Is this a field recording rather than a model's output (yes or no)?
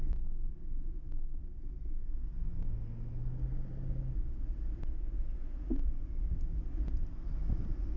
yes